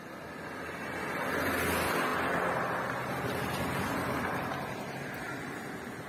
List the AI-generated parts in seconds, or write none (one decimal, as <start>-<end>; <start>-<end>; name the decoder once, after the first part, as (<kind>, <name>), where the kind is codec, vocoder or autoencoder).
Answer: none